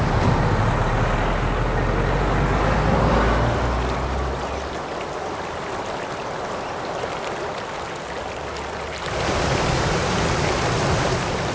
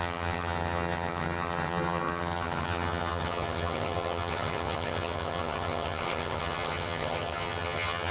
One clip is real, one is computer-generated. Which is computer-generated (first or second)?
second